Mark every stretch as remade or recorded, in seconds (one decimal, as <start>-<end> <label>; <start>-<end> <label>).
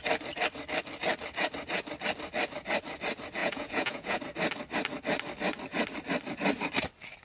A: 0.0-3.4 recorded; 3.4-4.2 remade; 4.2-7.2 recorded